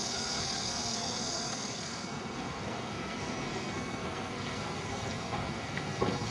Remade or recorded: remade